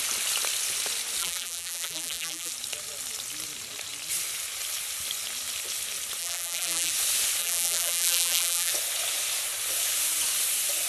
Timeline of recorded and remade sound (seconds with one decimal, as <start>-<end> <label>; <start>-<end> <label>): 0.0-1.2 recorded; 1.2-2.5 remade; 2.5-6.2 recorded; 6.2-6.9 remade; 6.9-7.4 recorded; 7.4-8.7 remade; 8.7-10.9 recorded